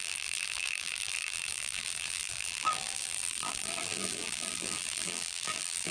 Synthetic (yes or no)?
yes